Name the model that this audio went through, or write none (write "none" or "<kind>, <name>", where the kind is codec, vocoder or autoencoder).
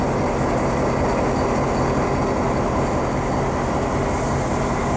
none